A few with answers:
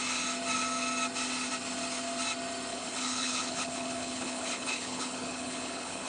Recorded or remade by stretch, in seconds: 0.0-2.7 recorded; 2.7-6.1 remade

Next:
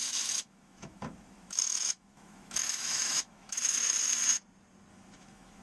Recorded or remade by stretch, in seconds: 0.0-4.1 remade; 4.1-4.9 recorded; 4.9-5.6 remade

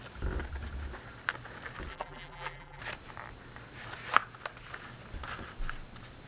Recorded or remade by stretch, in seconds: 0.0-1.9 recorded; 1.9-2.8 remade; 2.8-6.3 recorded

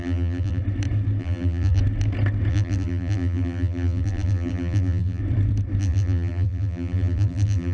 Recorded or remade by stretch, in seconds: 0.0-0.6 remade; 0.6-1.2 recorded; 1.2-1.8 remade; 1.8-2.5 recorded; 2.5-5.2 remade; 5.2-5.8 recorded; 5.8-7.7 remade

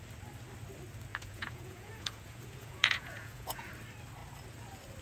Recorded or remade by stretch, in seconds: 0.0-1.1 recorded; 1.1-3.7 remade; 3.7-5.0 recorded

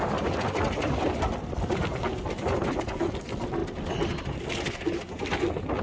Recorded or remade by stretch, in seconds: 0.0-5.8 recorded